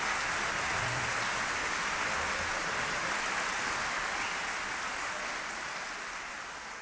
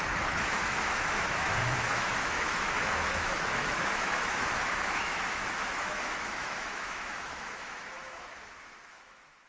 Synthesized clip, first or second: second